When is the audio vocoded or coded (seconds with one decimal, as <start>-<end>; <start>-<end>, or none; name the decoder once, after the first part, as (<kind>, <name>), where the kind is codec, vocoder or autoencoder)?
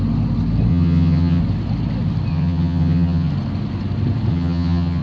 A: 0.7-1.4 (vocoder, HiFi-GAN); 2.3-3.3; 4.3-5.0